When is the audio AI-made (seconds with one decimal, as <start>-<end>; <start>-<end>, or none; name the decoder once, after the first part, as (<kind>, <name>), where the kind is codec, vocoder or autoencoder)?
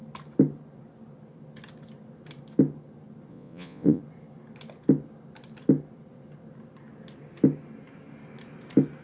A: 3.3-4.0 (vocoder, Vocos)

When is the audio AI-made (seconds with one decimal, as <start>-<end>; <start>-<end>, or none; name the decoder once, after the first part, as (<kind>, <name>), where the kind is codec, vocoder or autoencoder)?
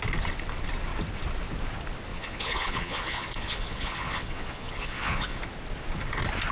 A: 2.1-5.4 (vocoder, Vocos)